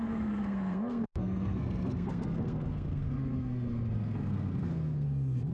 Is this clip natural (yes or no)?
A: no